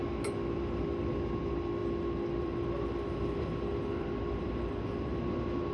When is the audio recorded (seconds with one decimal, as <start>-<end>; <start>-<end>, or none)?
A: 0.0-1.8; 5.2-5.7

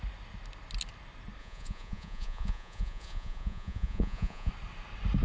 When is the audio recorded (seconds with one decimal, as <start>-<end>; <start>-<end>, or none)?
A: 0.0-1.4; 4.5-5.2

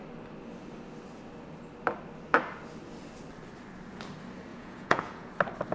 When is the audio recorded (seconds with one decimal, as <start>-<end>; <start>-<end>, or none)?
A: 0.0-4.5; 5.3-5.7

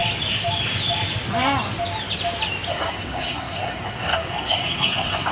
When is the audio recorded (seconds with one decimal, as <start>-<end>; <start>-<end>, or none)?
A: 0.0-2.7